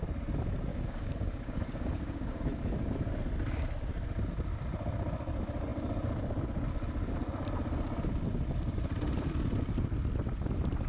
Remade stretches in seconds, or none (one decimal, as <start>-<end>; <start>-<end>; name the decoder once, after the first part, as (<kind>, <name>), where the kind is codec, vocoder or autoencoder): 0.7-2.4 (codec, DAC)